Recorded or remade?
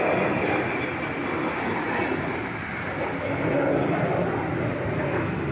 recorded